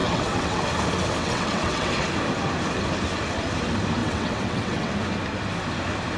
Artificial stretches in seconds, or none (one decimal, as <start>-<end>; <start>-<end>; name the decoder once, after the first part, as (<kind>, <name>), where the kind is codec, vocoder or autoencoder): 0.0-0.6 (vocoder, WaveNeXt); 1.2-1.9; 4.0-4.9